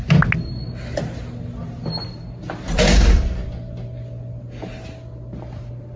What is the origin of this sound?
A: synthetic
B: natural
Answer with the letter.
B